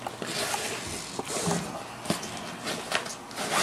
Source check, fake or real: real